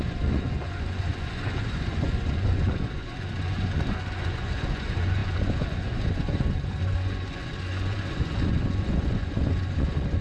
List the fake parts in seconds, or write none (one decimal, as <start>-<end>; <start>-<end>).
0.0-10.2